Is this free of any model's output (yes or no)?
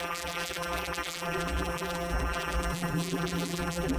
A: no